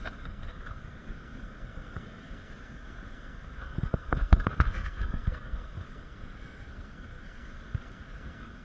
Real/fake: fake